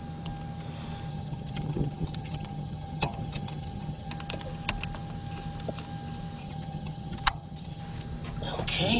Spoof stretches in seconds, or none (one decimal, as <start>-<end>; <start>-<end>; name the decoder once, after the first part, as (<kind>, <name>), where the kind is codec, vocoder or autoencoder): 1.1-4.1 (vocoder, HiFi-GAN); 6.4-7.8